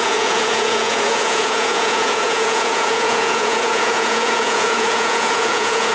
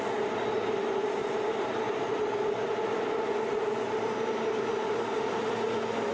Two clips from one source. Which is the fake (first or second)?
first